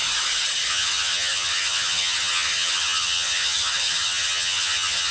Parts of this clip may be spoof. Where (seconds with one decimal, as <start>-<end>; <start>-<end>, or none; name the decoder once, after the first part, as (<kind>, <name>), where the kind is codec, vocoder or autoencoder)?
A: 0.7-5.1 (vocoder, HiFi-GAN)